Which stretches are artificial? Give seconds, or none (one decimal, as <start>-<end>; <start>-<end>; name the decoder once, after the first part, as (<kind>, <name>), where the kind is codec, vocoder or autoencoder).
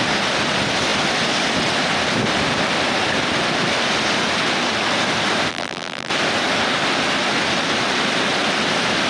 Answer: 5.5-6.1 (vocoder, BigVGAN v2)